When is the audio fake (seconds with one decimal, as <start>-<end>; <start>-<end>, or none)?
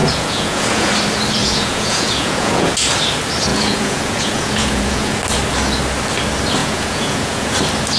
0.0-0.9; 1.4-2.7; 3.5-5.2; 6.6-7.5